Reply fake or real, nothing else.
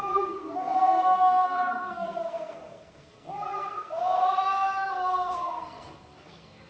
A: fake